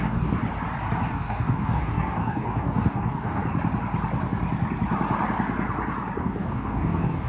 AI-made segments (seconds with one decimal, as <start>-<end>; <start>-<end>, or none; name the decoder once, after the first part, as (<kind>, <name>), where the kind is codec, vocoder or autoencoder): 0.0-0.4 (codec, DAC); 1.1-3.4; 6.2-7.3